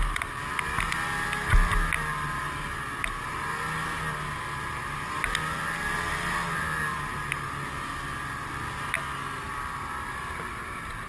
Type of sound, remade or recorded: recorded